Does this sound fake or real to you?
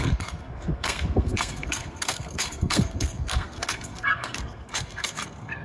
fake